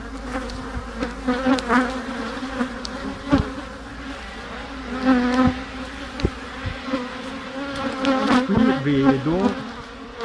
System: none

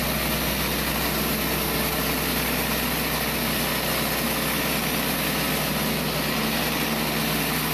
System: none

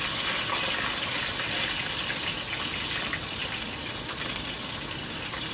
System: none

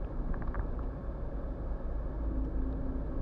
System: none